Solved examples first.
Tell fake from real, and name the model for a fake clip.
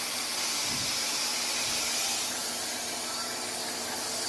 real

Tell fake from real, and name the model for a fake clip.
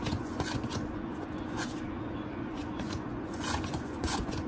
fake, vocoder, Vocos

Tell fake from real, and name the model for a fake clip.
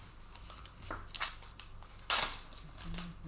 real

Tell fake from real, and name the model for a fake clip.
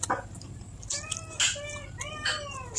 real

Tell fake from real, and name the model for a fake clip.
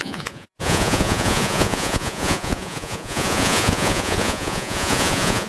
fake, vocoder, Vocos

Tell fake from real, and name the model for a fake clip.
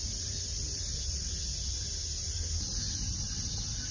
real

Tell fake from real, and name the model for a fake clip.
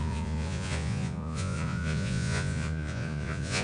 fake, vocoder, Vocos